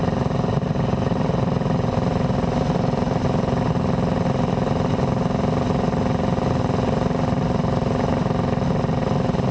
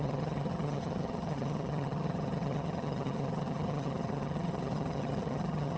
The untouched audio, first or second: first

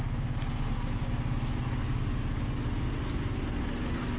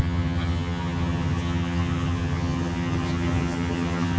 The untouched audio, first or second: first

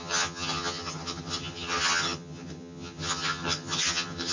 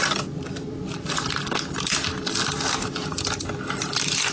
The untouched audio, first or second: second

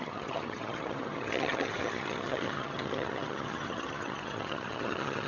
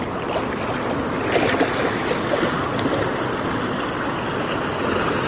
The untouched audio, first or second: second